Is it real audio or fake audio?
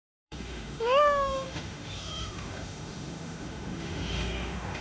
fake